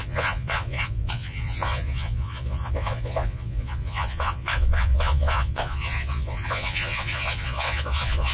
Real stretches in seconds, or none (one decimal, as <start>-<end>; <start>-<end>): none